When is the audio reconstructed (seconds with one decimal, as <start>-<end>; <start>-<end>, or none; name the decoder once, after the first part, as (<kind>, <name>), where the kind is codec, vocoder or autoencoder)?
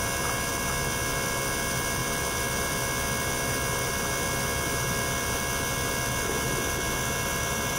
none